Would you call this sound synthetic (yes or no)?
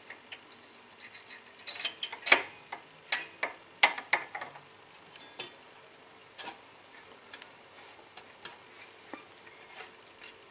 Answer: no